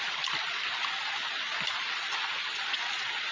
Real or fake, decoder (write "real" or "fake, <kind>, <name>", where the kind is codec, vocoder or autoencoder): real